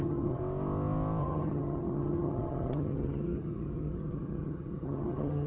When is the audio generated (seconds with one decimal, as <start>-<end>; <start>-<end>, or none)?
0.0-0.4; 1.2-5.5